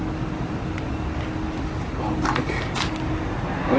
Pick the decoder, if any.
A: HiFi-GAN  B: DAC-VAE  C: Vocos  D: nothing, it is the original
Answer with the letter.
D